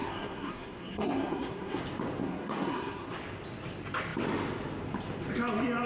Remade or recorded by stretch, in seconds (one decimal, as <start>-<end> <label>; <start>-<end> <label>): 0.0-1.8 remade; 1.8-2.2 recorded; 2.2-3.1 remade; 3.1-5.9 recorded